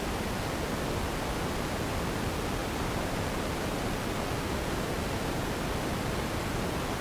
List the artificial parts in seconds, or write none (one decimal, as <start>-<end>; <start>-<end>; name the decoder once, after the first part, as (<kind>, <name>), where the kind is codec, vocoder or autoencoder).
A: 2.6-3.2 (vocoder, BigVGAN v2)